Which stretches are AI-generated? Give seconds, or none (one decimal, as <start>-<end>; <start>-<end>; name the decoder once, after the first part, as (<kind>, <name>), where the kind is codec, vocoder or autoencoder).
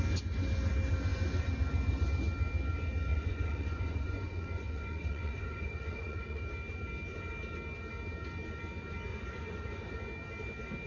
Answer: 3.1-6.4 (vocoder, Vocos); 9.1-10.0